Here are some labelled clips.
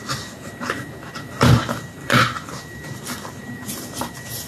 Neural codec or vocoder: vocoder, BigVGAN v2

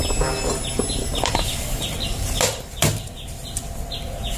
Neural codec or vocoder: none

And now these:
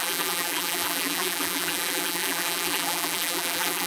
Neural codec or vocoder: vocoder, BigVGAN v2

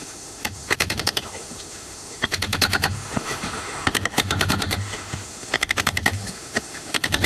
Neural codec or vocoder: autoencoder, DAC-VAE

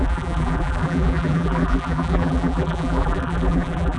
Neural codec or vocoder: vocoder, BigVGAN v2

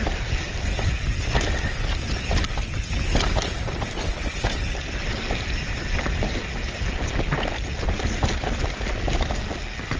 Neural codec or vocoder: none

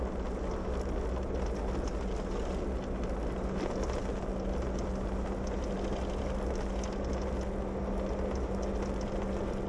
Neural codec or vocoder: none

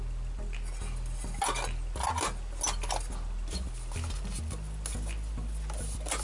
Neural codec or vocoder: none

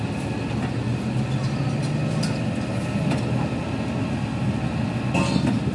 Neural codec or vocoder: none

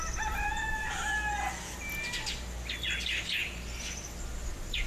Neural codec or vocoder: none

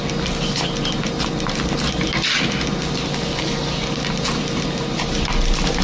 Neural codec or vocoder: none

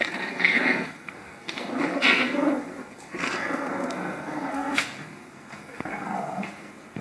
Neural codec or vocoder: codec, SNAC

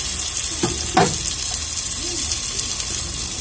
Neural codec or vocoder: none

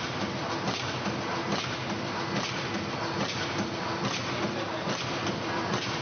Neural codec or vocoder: none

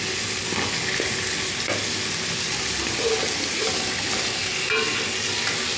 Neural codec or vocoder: none